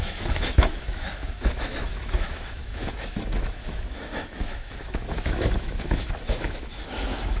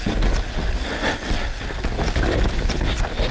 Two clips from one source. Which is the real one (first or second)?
second